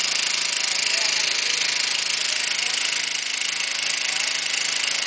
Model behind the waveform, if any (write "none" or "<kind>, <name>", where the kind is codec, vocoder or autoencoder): none